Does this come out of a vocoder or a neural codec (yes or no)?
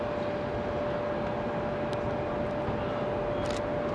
no